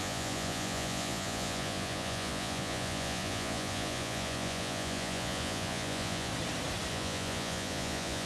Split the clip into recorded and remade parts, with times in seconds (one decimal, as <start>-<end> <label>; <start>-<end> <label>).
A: 0.0-6.3 remade; 6.3-6.9 recorded; 6.9-8.3 remade